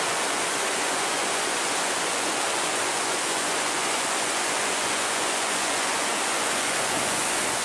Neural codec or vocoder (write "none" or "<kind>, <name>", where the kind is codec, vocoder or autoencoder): vocoder, Vocos